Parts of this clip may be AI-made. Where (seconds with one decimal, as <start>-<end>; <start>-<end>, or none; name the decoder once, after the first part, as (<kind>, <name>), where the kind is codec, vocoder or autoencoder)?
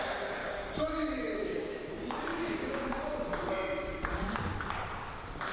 0.4-1.9 (codec, DAC); 2.3-3.0